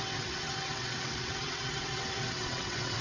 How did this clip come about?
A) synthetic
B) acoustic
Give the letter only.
A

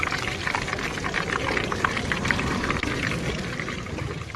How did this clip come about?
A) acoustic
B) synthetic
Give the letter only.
B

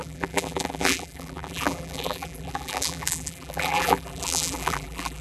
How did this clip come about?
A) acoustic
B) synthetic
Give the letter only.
B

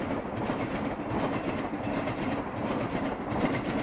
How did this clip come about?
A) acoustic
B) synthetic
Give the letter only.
A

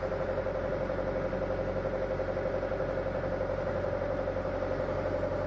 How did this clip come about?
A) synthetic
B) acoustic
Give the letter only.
B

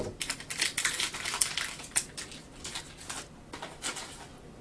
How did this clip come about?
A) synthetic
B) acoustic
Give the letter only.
B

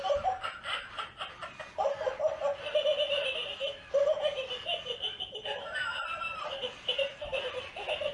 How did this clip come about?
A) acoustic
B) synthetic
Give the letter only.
A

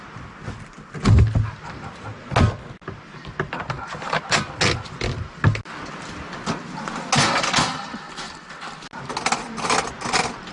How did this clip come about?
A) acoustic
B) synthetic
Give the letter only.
A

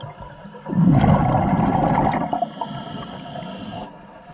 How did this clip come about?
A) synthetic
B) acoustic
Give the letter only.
B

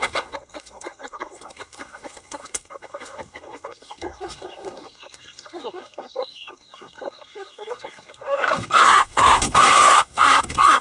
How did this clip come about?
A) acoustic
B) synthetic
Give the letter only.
B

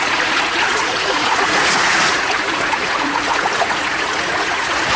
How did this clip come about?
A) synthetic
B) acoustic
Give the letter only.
A